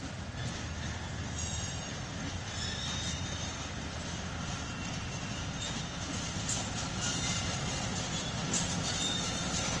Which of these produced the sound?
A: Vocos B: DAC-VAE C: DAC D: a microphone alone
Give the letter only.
D